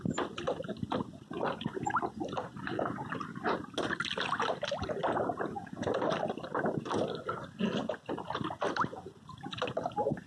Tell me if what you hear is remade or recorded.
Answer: recorded